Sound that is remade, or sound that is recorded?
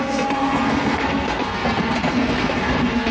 remade